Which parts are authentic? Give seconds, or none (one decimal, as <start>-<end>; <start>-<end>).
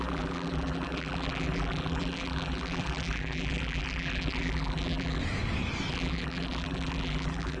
5.2-5.9